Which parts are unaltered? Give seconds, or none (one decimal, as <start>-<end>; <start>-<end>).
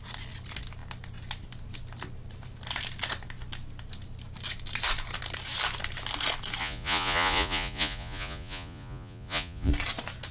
0.0-6.6; 9.7-10.3